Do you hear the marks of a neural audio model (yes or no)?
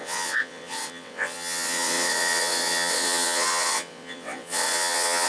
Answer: yes